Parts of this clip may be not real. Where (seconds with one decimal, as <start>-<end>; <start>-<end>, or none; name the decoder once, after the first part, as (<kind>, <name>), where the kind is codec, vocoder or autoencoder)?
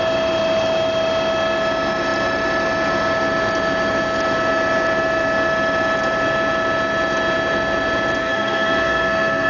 8.2-9.5 (codec, SNAC)